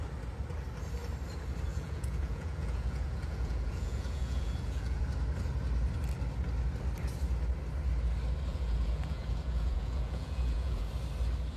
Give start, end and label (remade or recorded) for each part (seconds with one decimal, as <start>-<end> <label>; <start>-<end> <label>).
0.0-1.7 recorded; 1.7-5.0 remade; 5.0-8.5 recorded; 8.5-10.9 remade; 10.9-11.6 recorded

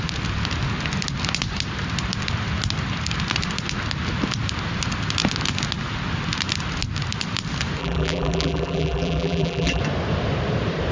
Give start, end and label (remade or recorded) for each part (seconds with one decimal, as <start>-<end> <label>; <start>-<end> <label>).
0.0-7.8 recorded; 7.8-9.8 remade; 9.8-10.9 recorded

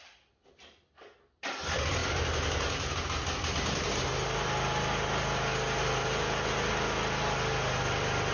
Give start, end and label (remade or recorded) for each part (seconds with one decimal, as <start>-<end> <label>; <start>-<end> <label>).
0.0-8.3 recorded

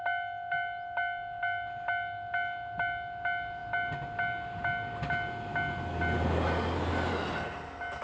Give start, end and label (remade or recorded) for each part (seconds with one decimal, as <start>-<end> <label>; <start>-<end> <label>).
0.0-8.0 recorded